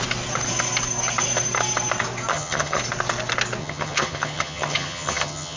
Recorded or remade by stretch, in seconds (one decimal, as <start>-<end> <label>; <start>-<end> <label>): 0.0-2.3 recorded; 2.3-2.8 remade; 2.8-3.6 recorded; 3.6-5.6 remade

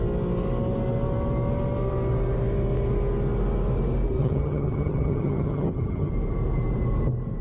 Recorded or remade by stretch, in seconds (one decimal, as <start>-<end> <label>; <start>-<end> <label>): 0.0-4.2 recorded; 4.2-6.1 remade; 6.1-7.4 recorded

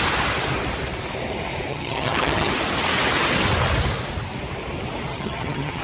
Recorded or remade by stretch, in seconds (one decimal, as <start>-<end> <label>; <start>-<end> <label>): 0.0-1.7 recorded; 1.7-2.5 remade; 2.5-5.1 recorded; 5.1-5.8 remade

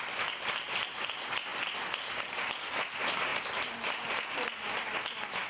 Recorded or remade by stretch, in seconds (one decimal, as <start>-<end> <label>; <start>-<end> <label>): 0.0-5.5 recorded